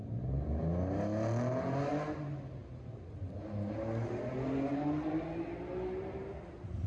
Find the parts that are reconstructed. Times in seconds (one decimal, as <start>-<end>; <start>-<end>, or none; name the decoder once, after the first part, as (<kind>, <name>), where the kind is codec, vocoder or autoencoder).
none